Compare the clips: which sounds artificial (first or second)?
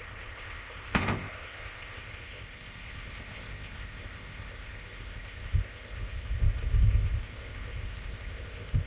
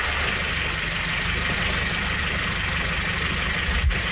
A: first